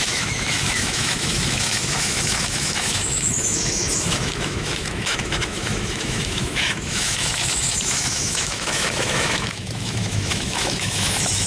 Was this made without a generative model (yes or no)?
no